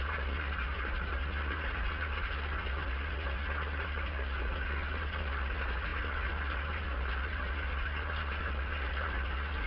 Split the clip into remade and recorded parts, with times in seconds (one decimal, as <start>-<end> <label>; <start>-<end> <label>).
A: 0.0-9.7 remade